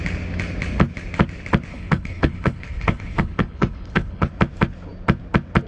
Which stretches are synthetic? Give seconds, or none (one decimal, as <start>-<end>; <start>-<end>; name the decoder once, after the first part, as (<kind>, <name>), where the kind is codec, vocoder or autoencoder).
1.7-4.3 (codec, HILCodec)